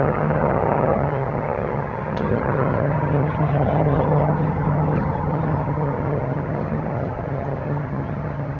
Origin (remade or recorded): remade